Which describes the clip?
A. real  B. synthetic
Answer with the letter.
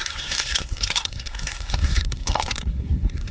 B